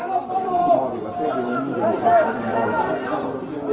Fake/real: real